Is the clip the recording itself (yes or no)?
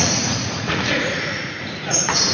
no